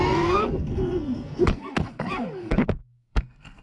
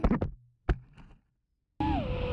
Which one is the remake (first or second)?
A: first